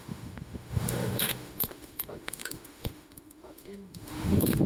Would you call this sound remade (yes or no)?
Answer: yes